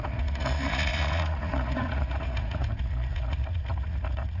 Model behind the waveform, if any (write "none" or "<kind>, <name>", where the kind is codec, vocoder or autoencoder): vocoder, Vocos